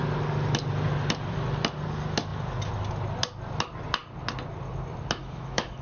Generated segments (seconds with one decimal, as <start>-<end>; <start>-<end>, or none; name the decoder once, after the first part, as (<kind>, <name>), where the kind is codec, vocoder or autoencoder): 5.2-5.8 (autoencoder, DAC-VAE)